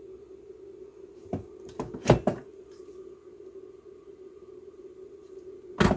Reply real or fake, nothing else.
real